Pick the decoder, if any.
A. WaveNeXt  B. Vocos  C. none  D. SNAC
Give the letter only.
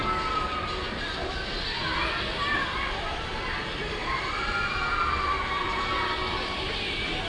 C